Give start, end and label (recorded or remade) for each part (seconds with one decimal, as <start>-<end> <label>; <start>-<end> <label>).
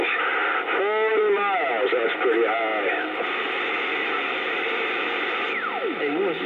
0.0-6.5 recorded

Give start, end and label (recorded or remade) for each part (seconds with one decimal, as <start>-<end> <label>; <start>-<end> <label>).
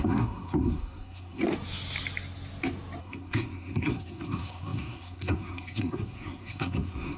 0.0-1.4 remade; 1.4-3.0 recorded; 3.0-7.2 remade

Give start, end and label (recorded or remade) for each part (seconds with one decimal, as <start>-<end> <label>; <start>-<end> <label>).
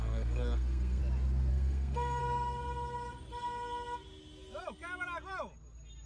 0.0-1.0 remade; 1.0-1.5 recorded; 1.5-2.2 remade; 2.2-6.1 recorded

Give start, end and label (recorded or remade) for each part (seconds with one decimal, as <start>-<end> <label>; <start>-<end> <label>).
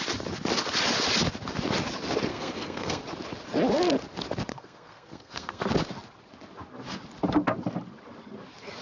0.0-2.3 recorded; 2.3-3.0 remade; 3.0-4.5 recorded; 4.5-5.6 remade; 5.6-8.8 recorded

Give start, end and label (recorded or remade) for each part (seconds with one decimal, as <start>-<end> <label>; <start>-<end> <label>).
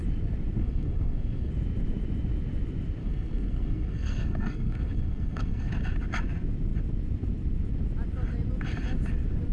0.0-0.6 recorded; 0.6-1.5 remade; 1.5-3.0 recorded; 3.0-5.7 remade; 5.7-9.5 recorded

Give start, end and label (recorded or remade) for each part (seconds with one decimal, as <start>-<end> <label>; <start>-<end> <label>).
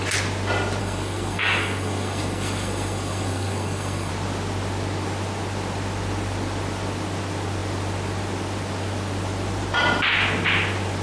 0.0-0.8 recorded; 0.8-4.1 remade; 4.1-11.0 recorded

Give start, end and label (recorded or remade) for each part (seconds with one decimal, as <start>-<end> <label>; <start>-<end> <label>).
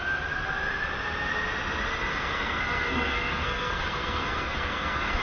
0.0-2.1 recorded; 2.1-5.2 remade